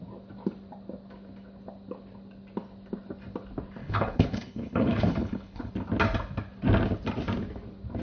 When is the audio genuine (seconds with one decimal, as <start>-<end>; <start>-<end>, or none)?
0.0-3.8; 5.7-8.0